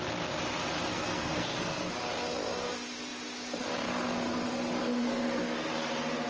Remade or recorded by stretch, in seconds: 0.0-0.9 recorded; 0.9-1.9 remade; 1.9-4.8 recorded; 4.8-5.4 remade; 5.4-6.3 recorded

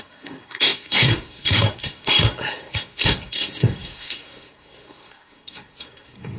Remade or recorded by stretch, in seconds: 0.0-6.4 remade

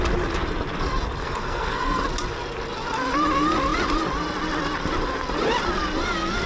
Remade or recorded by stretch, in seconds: 0.0-1.2 recorded; 1.2-2.0 remade; 2.0-6.5 recorded

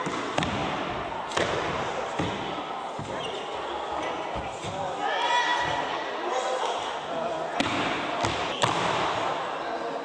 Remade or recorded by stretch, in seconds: 0.0-10.0 recorded

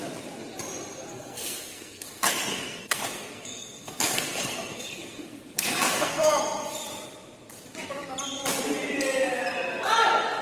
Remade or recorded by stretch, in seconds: 0.0-1.1 recorded; 1.1-6.3 remade; 6.3-10.4 recorded